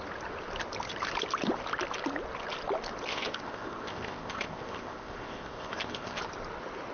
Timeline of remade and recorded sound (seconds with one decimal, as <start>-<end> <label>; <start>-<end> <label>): 0.0-3.1 recorded; 3.1-6.2 remade; 6.2-6.9 recorded